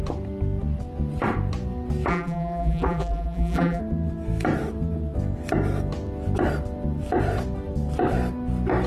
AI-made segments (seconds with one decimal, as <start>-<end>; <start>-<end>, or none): 2.1-3.8